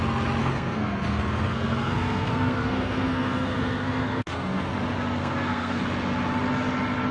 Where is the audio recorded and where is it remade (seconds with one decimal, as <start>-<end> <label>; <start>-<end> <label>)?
0.0-0.4 recorded; 0.4-4.7 remade; 4.7-5.2 recorded; 5.2-5.8 remade; 5.8-7.1 recorded